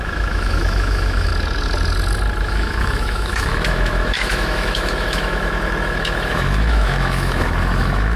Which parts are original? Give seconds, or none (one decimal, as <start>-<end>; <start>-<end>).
1.3-2.4